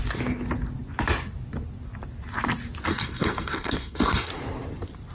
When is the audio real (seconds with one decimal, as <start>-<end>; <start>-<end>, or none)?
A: 0.0-2.9; 4.3-5.1